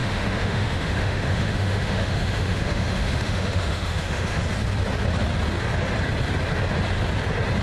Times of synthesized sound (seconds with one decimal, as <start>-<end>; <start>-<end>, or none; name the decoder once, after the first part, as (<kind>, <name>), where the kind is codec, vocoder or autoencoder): 0.0-4.4 (autoencoder, DAC-VAE)